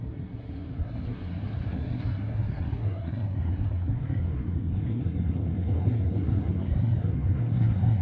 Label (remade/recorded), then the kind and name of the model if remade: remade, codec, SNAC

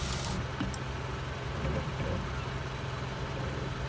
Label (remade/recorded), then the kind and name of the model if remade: recorded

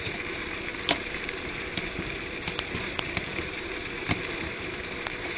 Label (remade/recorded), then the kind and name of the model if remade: remade, vocoder, BigVGAN v2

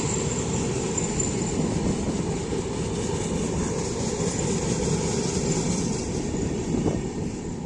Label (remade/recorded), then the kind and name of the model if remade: recorded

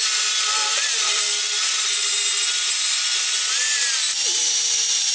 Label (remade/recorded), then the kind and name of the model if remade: recorded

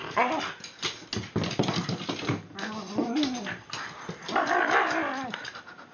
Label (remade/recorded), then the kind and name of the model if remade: recorded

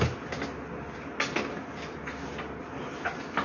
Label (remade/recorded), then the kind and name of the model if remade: recorded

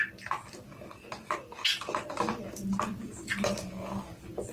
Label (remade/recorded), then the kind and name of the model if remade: recorded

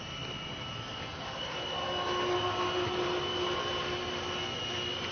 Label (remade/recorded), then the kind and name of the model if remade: recorded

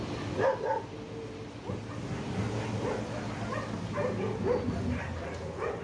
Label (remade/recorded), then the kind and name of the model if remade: recorded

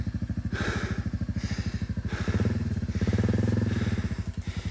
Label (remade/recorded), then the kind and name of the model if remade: recorded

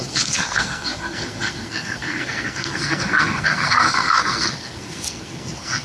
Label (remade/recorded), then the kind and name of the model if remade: remade, codec, SNAC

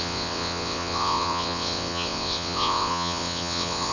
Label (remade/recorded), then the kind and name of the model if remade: remade, vocoder, WaveNeXt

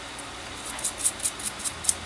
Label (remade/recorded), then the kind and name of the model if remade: recorded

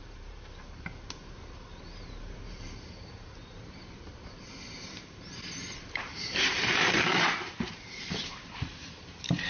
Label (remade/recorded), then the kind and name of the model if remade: remade, vocoder, BigVGAN v2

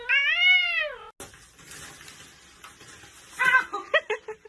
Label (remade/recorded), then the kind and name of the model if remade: recorded